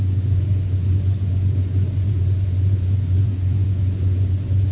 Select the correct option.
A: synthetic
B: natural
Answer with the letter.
A